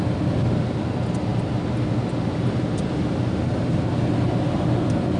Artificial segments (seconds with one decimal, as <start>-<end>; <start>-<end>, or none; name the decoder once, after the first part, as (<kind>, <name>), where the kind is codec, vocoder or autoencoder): none

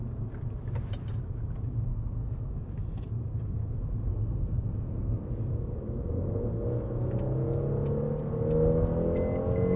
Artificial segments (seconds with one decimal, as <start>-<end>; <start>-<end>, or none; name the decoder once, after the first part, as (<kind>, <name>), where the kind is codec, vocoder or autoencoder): 1.9-2.5 (codec, SNAC); 4.1-5.3

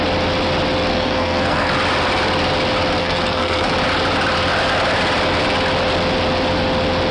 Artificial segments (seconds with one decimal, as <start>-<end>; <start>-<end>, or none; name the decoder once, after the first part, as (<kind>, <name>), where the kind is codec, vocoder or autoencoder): 0.9-1.7 (codec, SNAC); 3.0-3.7

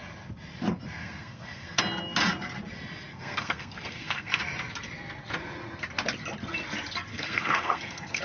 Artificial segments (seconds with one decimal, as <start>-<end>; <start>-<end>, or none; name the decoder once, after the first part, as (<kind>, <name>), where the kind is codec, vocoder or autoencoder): 1.0-1.8 (codec, SNAC); 3.1-4.4; 7.1-8.2